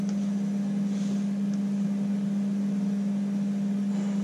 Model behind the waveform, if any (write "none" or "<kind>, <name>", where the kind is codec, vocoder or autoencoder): none